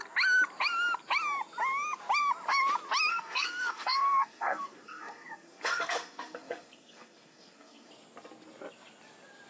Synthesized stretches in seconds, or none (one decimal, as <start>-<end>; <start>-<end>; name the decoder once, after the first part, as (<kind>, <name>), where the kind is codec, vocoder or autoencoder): 3.1-7.9 (codec, SNAC)